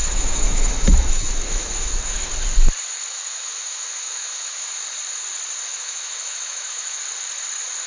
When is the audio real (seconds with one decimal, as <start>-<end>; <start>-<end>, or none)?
2.3-3.1; 4.7-5.7; 7.0-7.9